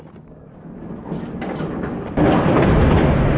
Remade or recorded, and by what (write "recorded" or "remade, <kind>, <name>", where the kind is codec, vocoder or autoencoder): recorded